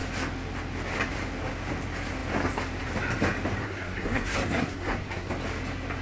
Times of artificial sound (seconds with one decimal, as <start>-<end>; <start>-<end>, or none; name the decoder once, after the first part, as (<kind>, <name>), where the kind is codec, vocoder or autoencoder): 3.6-5.3 (codec, SNAC)